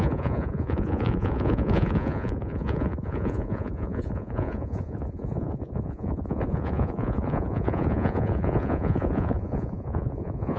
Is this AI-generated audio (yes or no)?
yes